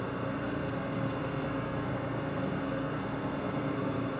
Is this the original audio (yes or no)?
no